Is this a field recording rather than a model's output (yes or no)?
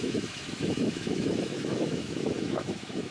no